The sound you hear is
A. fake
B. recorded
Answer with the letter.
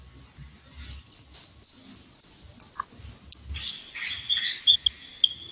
B